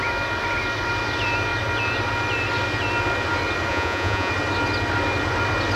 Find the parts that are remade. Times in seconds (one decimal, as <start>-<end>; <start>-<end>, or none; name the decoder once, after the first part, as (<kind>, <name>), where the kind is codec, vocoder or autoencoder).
3.7-4.3 (vocoder, Vocos)